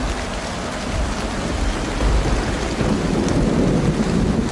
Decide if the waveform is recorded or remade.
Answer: recorded